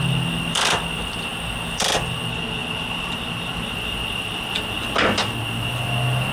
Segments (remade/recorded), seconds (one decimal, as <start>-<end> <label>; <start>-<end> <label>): 0.0-2.6 recorded; 2.6-3.3 remade; 3.3-6.3 recorded